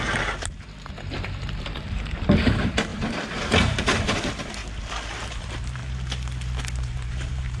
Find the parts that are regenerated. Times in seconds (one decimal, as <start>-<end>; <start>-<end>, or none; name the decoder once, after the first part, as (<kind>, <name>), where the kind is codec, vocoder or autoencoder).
0.0-4.6 (vocoder, BigVGAN v2); 5.2-5.8; 6.6-7.6